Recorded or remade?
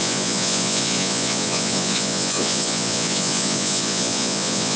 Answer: remade